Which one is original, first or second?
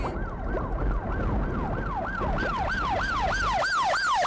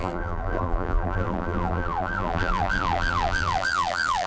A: first